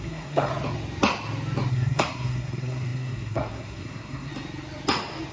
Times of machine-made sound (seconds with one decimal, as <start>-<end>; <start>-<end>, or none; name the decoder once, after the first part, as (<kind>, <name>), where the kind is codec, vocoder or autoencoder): 0.0-0.5 (codec, SNAC); 1.7-4.3